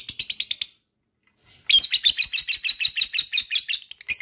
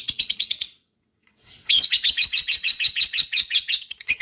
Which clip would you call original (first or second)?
first